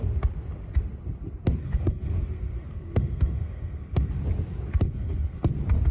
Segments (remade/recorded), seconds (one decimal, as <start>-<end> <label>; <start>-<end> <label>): 0.0-1.6 recorded; 1.6-4.1 remade; 4.1-4.7 recorded; 4.7-5.5 remade; 5.5-5.9 recorded